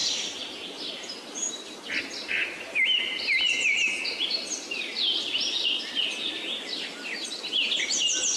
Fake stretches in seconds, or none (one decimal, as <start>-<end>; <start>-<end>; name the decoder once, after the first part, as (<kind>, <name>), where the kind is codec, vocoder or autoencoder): 0.0-1.9 (vocoder, BigVGAN v2); 2.4-5.4